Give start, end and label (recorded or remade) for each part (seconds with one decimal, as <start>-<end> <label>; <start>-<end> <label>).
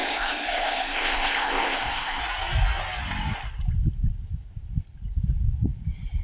0.0-2.2 remade; 2.2-6.2 recorded